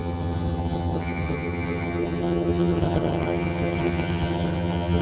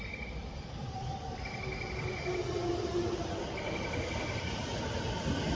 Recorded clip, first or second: second